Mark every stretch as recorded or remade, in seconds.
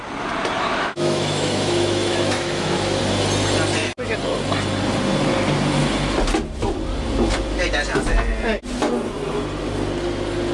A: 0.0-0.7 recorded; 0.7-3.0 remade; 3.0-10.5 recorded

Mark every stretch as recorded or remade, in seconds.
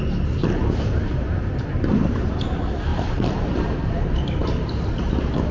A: 0.0-1.0 recorded; 1.0-2.5 remade; 2.5-2.9 recorded; 2.9-3.9 remade; 3.9-4.4 recorded; 4.4-5.0 remade; 5.0-5.5 recorded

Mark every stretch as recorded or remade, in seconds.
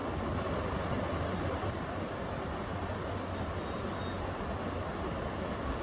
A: 0.0-5.8 recorded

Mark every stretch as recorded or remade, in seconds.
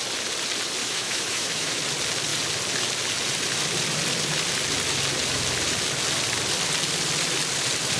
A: 0.0-0.8 recorded; 0.8-1.8 remade; 1.8-8.0 recorded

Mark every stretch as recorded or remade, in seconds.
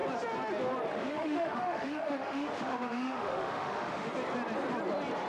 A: 0.0-0.9 recorded; 0.9-4.1 remade; 4.1-5.3 recorded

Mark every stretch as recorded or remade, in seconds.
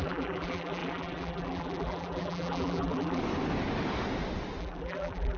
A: 0.0-3.2 remade; 3.2-4.6 recorded; 4.6-5.4 remade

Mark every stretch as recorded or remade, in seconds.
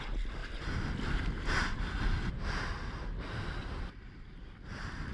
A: 0.0-5.1 recorded